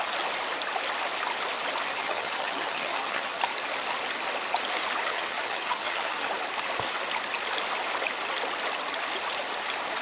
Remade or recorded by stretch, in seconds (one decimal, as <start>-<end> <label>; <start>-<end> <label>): 0.0-1.9 recorded; 1.9-3.4 remade; 3.4-5.1 recorded; 5.1-6.3 remade; 6.3-10.0 recorded